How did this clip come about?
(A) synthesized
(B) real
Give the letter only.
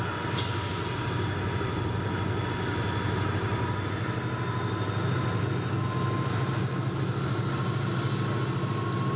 B